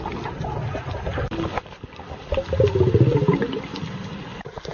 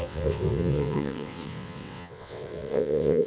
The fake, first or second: second